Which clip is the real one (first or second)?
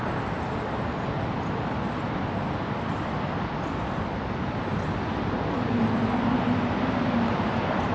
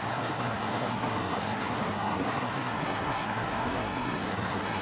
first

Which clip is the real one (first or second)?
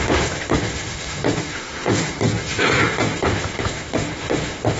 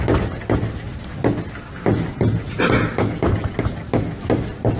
second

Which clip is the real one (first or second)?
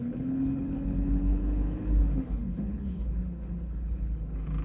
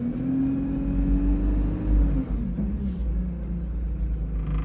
second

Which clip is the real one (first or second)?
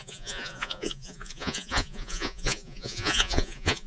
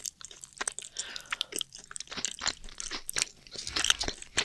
second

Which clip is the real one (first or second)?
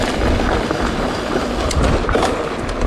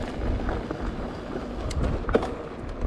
second